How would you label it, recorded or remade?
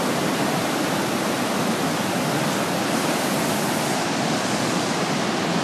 recorded